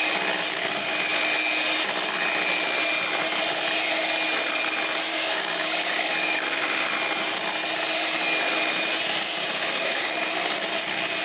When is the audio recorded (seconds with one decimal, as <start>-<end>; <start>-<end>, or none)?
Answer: 0.0-5.1; 6.9-9.5; 10.1-11.2

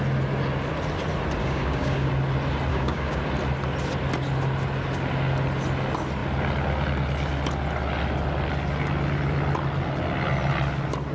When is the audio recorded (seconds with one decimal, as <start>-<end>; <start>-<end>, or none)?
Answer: 0.0-1.4; 2.1-2.7; 3.2-11.1

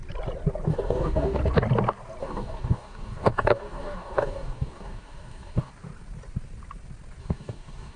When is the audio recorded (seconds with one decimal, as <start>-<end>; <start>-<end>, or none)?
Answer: 0.0-0.7; 1.4-2.2; 5.7-7.2

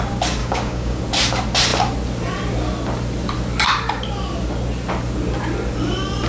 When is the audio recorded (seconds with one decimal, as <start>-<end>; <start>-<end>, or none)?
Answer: 0.0-0.4; 1.0-6.3

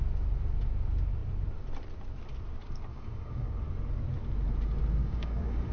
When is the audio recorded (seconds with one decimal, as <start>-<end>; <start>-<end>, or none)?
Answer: 0.0-2.9; 3.5-5.0

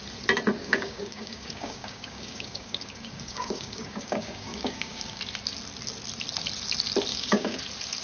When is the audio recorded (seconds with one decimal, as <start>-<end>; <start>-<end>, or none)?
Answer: 0.0-0.6; 5.2-7.1; 7.6-8.0

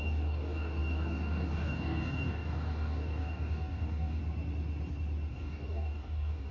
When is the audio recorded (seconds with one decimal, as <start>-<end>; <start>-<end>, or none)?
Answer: 4.2-5.3